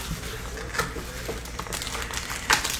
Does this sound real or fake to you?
real